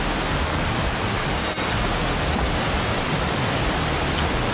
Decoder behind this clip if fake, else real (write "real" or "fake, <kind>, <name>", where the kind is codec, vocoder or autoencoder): real